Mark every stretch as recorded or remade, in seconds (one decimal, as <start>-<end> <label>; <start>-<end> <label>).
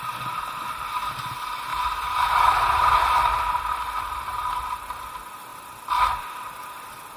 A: 0.0-7.2 recorded